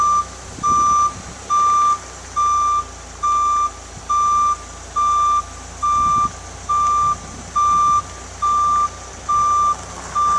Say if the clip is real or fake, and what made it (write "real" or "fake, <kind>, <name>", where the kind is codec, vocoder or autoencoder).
real